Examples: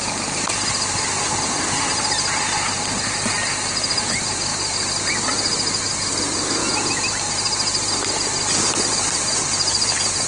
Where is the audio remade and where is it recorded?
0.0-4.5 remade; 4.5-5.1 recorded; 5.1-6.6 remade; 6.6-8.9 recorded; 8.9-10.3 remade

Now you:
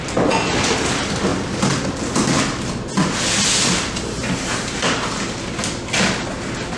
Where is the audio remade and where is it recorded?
0.0-6.8 recorded

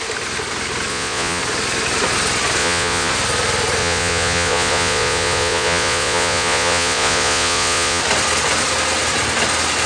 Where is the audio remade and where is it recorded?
0.0-0.9 recorded; 0.9-1.4 remade; 1.4-2.6 recorded; 2.6-3.1 remade; 3.1-3.8 recorded; 3.8-8.0 remade; 8.0-9.9 recorded

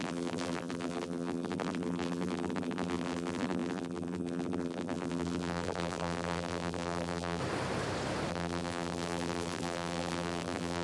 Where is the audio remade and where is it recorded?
0.0-7.4 remade; 7.4-8.3 recorded; 8.3-10.8 remade

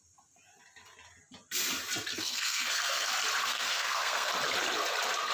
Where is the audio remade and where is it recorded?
0.0-2.1 recorded; 2.1-3.1 remade; 3.1-3.5 recorded; 3.5-4.3 remade; 4.3-5.3 recorded